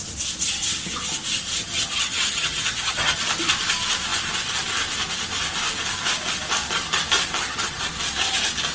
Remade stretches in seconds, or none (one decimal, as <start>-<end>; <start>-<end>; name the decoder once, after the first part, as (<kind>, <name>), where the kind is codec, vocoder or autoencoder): 1.6-3.2 (vocoder, HiFi-GAN); 7.4-7.9